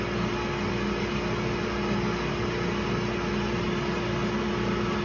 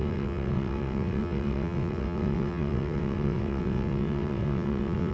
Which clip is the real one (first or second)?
first